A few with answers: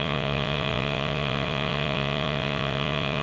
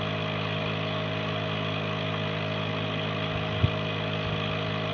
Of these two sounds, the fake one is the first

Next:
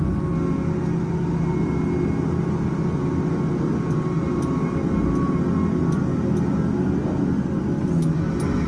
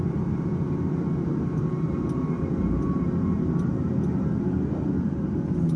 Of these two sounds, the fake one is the second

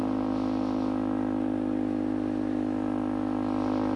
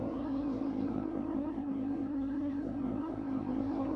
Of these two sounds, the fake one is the second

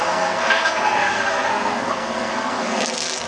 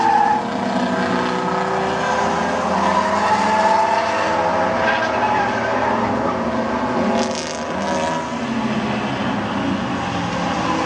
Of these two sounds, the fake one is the first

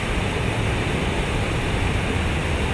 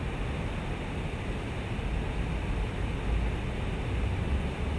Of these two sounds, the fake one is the first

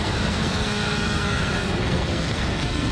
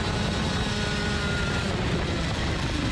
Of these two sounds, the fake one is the first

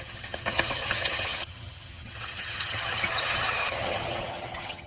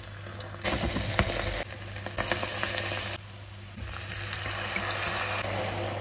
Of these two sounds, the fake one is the first